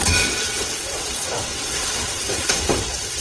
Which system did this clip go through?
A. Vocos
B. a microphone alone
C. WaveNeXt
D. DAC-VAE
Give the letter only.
C